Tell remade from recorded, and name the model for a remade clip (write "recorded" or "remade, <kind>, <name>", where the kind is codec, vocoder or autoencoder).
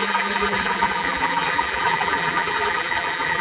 remade, vocoder, BigVGAN v2